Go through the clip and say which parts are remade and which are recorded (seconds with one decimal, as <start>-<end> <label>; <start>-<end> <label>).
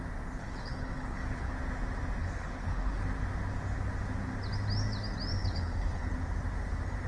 0.0-0.4 recorded; 0.4-1.5 remade; 1.5-2.2 recorded; 2.2-3.0 remade; 3.0-5.4 recorded; 5.4-6.1 remade; 6.1-7.1 recorded